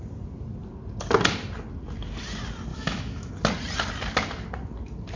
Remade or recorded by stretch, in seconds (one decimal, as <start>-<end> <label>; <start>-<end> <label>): 0.0-2.7 recorded; 2.7-3.3 remade; 3.3-5.2 recorded